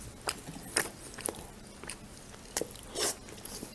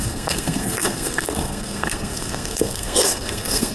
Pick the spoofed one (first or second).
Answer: second